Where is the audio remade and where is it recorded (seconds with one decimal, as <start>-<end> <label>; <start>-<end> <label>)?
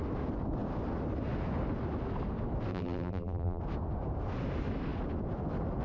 0.0-2.7 recorded; 2.7-3.6 remade; 3.6-5.8 recorded